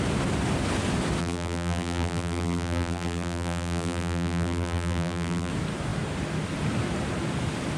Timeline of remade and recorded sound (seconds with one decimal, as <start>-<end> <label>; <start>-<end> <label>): 0.0-1.2 recorded; 1.2-5.5 remade; 5.5-7.8 recorded